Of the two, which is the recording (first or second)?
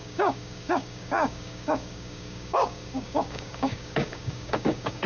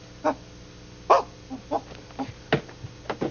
second